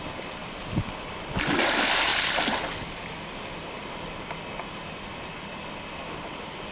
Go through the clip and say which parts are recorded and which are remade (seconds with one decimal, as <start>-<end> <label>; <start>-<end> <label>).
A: 0.0-6.7 recorded